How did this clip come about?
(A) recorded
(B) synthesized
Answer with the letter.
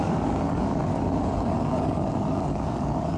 B